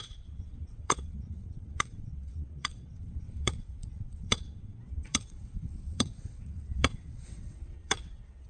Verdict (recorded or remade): remade